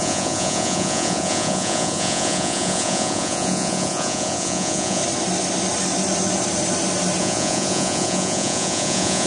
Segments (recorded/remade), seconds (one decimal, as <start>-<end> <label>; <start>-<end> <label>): 0.0-5.0 remade; 5.0-7.2 recorded; 7.2-9.3 remade